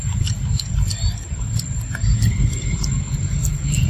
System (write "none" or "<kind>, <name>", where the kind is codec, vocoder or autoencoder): none